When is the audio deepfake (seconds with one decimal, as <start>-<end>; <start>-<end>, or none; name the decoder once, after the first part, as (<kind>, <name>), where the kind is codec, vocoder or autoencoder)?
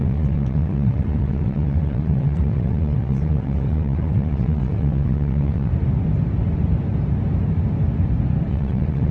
0.0-5.7 (vocoder, WaveNeXt); 8.5-9.1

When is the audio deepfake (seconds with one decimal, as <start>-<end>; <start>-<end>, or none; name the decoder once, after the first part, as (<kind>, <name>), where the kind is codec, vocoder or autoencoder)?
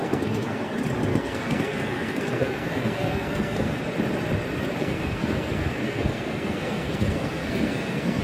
0.0-0.7 (codec, SNAC); 1.1-3.8; 4.8-8.2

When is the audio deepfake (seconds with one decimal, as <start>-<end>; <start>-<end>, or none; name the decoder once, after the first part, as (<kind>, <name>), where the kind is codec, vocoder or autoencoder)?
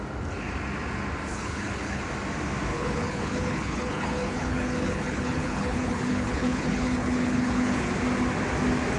1.3-2.0 (codec, HILCodec); 2.7-7.9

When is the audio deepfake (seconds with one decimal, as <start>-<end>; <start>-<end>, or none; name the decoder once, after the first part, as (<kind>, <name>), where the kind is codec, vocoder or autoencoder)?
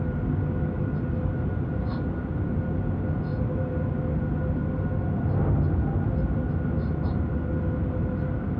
none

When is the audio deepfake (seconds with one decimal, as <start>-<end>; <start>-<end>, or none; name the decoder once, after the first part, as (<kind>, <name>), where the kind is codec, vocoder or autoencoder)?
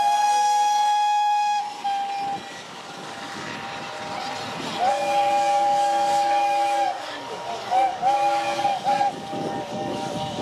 0.0-1.8 (codec, DAC); 2.5-3.5; 4.9-10.4